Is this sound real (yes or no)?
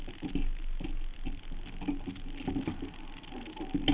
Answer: yes